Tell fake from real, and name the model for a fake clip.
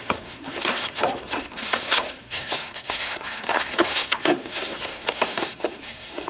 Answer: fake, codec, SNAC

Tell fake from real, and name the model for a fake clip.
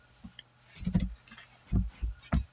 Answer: real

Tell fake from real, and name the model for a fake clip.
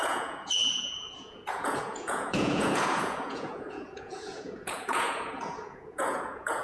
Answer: fake, vocoder, Vocos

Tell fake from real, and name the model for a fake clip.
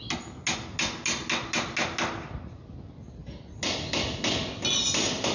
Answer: real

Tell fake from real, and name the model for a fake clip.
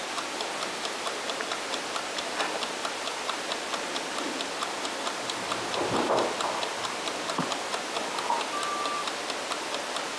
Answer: real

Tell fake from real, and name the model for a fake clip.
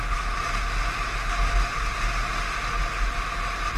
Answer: real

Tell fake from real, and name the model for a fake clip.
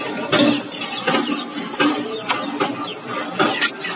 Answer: real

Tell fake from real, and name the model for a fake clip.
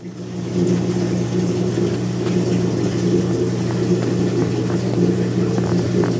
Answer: real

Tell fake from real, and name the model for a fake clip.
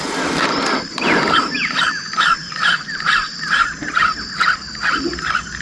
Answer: fake, vocoder, BigVGAN v2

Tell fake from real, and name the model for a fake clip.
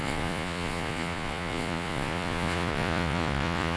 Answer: fake, vocoder, Vocos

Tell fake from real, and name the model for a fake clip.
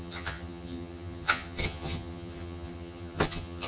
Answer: fake, vocoder, HiFi-GAN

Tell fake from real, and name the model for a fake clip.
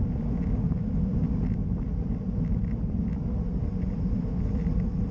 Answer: real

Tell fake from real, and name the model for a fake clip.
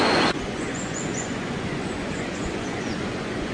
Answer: fake, vocoder, Vocos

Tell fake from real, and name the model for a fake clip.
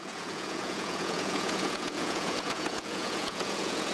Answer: fake, vocoder, Vocos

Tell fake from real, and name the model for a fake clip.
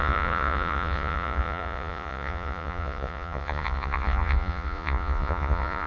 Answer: fake, vocoder, Vocos